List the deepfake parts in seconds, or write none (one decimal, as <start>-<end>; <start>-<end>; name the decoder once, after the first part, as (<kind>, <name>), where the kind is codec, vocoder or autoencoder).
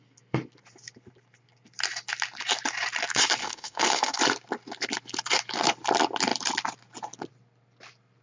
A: 3.4-4.2 (autoencoder, DAC-VAE)